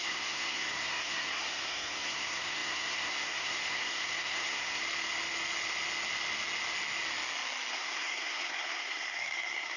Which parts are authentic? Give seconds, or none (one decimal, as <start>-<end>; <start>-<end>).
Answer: 4.8-7.7